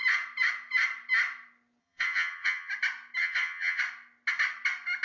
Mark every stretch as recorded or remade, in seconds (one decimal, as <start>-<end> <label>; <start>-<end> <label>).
0.0-1.8 recorded; 1.8-2.7 remade; 2.7-3.2 recorded; 3.2-3.8 remade; 3.8-5.0 recorded